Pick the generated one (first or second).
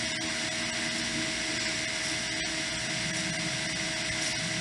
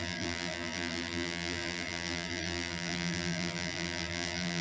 second